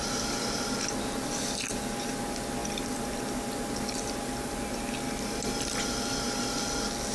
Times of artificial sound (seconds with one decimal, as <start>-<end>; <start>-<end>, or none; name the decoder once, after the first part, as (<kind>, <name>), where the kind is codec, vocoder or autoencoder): none